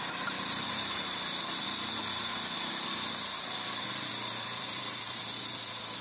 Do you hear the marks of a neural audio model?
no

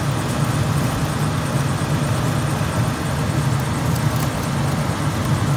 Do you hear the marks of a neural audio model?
no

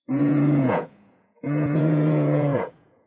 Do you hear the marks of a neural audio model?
yes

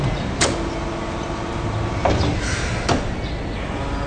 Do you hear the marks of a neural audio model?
no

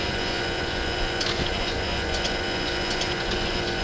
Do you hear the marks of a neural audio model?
yes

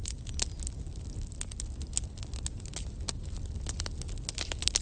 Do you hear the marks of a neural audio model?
no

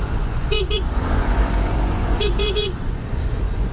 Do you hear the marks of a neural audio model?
yes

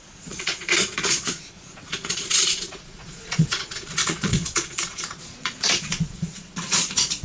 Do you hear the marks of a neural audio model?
yes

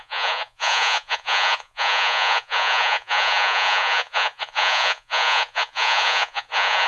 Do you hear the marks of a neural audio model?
yes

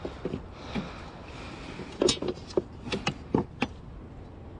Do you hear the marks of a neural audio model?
no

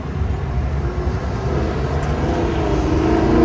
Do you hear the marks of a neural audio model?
no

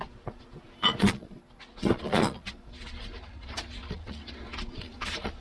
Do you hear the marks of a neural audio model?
yes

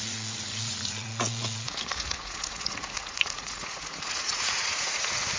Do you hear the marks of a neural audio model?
yes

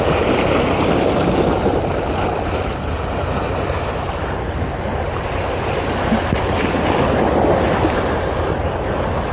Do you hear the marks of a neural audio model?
no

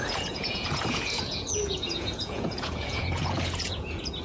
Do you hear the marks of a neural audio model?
yes